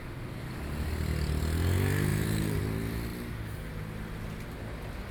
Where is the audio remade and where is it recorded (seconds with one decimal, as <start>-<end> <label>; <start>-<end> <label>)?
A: 0.0-2.1 recorded; 2.1-2.6 remade; 2.6-5.1 recorded